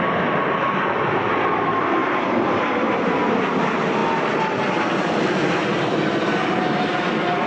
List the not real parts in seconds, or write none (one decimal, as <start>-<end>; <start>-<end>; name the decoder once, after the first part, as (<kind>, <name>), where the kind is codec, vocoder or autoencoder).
none

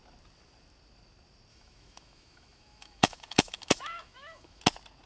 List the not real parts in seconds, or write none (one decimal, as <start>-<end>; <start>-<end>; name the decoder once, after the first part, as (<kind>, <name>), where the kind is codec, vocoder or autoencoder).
1.5-4.6 (autoencoder, DAC-VAE)

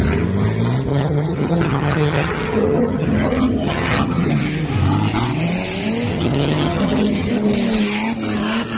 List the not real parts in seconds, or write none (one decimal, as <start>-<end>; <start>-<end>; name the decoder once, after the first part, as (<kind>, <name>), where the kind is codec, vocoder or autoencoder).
0.9-4.3 (vocoder, HiFi-GAN); 6.1-7.3

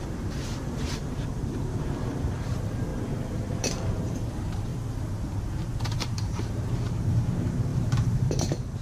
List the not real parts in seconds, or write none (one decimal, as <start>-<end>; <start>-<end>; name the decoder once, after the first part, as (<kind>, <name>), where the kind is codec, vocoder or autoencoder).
0.0-4.7 (vocoder, BigVGAN v2); 5.8-8.8

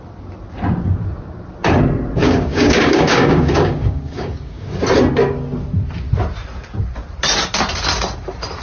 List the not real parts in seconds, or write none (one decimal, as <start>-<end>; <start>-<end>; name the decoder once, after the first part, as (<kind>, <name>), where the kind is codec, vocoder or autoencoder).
2.2-4.8 (codec, DAC)

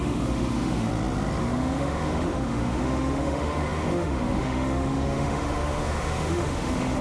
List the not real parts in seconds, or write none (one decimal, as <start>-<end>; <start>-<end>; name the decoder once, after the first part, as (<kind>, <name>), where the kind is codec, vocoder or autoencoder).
0.0-0.9 (autoencoder, DAC-VAE); 1.4-7.0